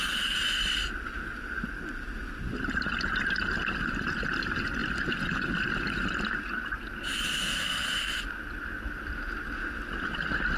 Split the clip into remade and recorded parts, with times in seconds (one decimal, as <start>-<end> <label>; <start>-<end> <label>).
0.0-10.6 recorded

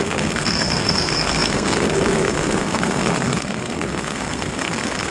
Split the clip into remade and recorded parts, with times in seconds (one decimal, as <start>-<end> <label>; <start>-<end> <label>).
0.0-5.1 remade